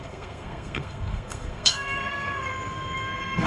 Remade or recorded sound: remade